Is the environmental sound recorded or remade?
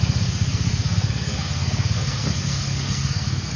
remade